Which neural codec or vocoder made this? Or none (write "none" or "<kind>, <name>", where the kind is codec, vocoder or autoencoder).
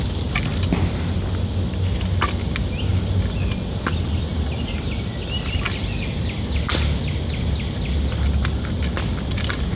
none